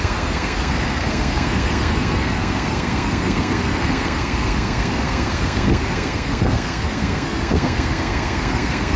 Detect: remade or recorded remade